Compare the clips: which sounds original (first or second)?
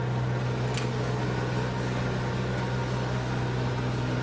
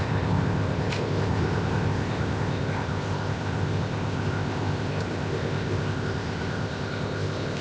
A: first